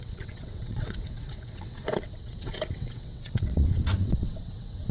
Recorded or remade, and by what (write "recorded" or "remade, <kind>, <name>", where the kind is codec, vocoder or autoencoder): remade, vocoder, WaveNeXt